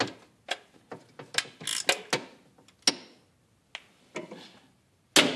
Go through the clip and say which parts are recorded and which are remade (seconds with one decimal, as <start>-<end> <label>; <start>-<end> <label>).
0.0-5.4 recorded